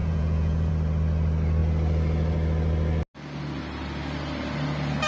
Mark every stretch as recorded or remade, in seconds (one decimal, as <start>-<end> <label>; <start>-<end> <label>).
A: 0.0-0.7 remade; 0.7-5.1 recorded